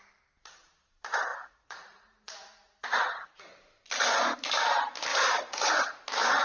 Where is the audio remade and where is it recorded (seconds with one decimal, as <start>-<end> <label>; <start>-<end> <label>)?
0.0-1.3 recorded; 1.3-3.4 remade; 3.4-5.1 recorded; 5.1-5.7 remade; 5.7-6.4 recorded